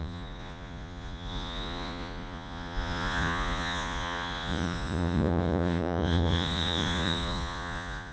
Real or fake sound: fake